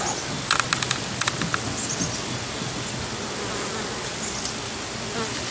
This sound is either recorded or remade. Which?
recorded